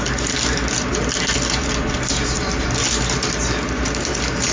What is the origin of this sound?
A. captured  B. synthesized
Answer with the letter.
A